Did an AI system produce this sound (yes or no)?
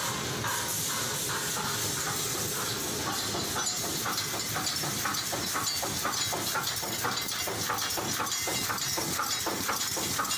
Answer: no